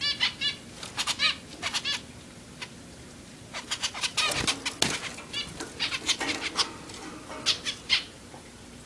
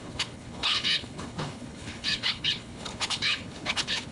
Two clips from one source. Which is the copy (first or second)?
second